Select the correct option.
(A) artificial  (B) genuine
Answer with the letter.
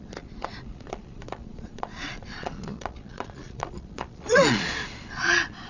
A